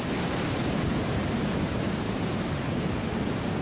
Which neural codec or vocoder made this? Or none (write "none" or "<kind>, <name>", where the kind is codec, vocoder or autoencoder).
vocoder, BigVGAN v2